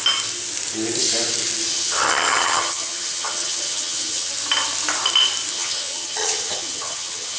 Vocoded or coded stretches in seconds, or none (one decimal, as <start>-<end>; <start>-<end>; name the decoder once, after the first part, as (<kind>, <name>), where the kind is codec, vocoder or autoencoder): 1.7-4.3 (vocoder, HiFi-GAN); 5.5-7.4

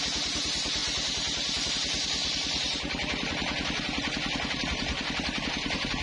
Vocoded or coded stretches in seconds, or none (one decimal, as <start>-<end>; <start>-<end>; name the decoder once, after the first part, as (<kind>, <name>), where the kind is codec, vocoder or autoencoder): 2.2-6.0 (vocoder, BigVGAN v2)

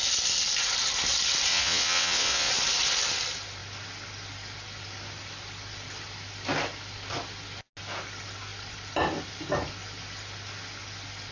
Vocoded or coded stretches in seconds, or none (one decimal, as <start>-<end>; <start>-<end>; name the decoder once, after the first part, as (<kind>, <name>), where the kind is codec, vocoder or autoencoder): 1.5-2.5 (vocoder, WaveNeXt)

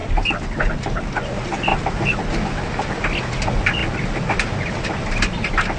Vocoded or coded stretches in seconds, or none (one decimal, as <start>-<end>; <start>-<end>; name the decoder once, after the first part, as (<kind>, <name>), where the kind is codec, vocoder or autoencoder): none

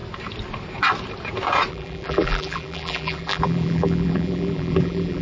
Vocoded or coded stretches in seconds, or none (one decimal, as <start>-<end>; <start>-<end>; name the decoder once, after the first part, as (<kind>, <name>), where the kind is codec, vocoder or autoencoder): 1.7-5.2 (vocoder, BigVGAN v2)